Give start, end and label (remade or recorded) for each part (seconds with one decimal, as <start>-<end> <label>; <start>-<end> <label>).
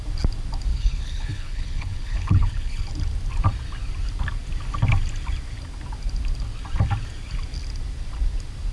0.0-0.7 recorded; 0.7-2.9 remade; 2.9-8.7 recorded